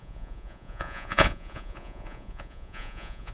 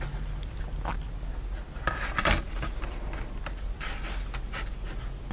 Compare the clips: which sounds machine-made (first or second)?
first